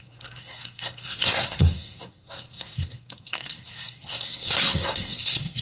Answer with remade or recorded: remade